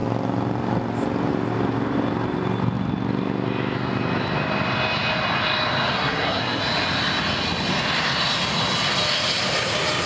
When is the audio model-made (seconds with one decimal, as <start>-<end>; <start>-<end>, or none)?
5.9-6.6